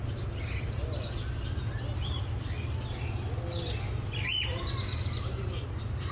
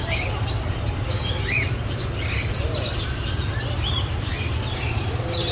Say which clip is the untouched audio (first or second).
first